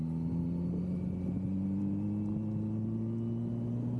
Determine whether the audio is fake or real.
real